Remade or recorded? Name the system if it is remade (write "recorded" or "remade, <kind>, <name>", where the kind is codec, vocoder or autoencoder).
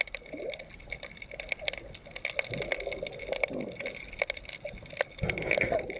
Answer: recorded